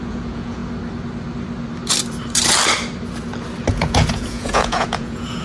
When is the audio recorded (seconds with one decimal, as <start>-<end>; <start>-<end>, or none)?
0.6-3.7